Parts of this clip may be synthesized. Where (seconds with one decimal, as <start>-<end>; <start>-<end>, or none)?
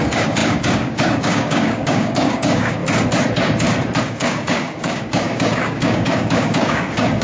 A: 0.0-2.8; 4.0-7.2